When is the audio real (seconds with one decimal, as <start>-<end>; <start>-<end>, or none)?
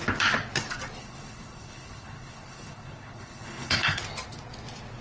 0.0-1.0; 4.0-5.0